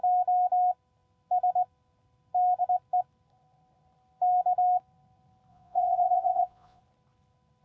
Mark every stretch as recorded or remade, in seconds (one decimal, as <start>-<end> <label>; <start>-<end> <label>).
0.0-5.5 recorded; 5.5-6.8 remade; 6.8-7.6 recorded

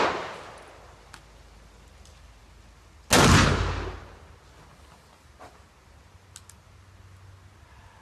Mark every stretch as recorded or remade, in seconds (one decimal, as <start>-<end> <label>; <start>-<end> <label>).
0.0-8.0 recorded

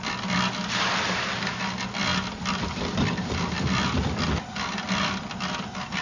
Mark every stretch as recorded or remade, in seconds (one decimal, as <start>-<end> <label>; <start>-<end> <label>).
0.0-6.0 recorded

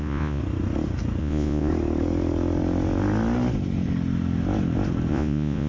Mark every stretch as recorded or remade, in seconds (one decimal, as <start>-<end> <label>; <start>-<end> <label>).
0.0-0.4 remade; 0.4-1.2 recorded; 1.2-1.7 remade; 1.7-5.1 recorded; 5.1-5.7 remade

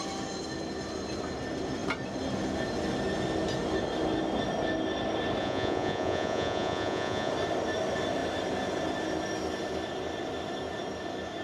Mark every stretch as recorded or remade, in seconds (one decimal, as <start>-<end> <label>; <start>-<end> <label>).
0.0-5.4 recorded; 5.4-7.3 remade; 7.3-11.4 recorded

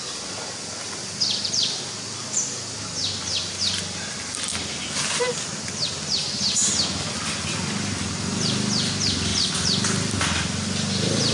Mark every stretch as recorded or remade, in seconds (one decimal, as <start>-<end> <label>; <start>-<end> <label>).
0.0-11.3 recorded

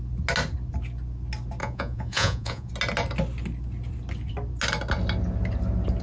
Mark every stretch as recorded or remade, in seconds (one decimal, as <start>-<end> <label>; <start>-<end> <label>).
0.0-1.6 recorded; 1.6-2.7 remade; 2.7-6.0 recorded